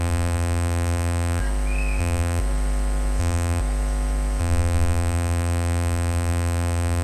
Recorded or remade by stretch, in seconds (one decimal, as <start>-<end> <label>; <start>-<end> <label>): 0.0-1.4 remade; 1.4-2.0 recorded; 2.0-2.4 remade; 2.4-3.2 recorded; 3.2-3.6 remade; 3.6-4.4 recorded; 4.4-7.0 remade